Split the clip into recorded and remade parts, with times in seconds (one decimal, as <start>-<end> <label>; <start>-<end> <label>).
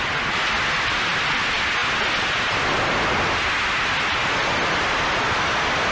0.0-5.9 recorded